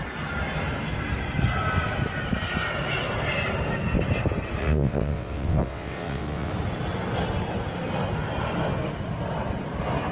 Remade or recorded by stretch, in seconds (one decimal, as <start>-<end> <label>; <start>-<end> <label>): 0.0-4.6 recorded; 4.6-6.5 remade; 6.5-10.1 recorded